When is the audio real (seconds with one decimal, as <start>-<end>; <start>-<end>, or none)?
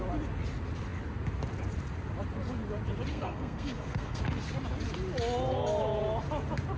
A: 0.0-3.1; 4.2-6.8